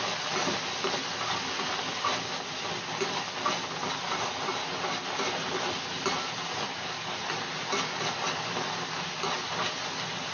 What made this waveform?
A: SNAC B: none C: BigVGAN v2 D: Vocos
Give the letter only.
B